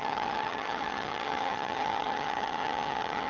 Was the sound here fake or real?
fake